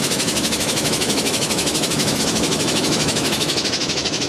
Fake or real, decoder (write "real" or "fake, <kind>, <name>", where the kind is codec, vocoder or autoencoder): fake, autoencoder, DAC-VAE